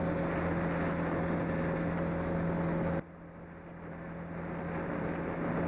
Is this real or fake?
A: real